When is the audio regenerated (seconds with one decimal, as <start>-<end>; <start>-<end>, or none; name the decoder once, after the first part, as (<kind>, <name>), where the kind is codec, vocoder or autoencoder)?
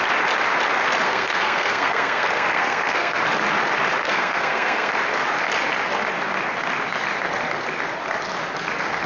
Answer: 1.0-3.2 (codec, SNAC); 4.0-5.0